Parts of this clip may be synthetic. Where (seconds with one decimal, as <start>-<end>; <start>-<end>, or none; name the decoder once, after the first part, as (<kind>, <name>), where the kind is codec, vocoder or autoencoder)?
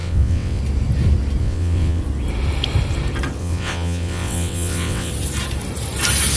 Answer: 0.0-0.6 (vocoder, WaveNeXt); 1.4-2.0; 3.4-5.1